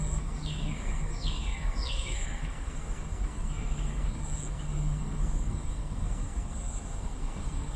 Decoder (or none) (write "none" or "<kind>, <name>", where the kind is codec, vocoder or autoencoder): codec, SNAC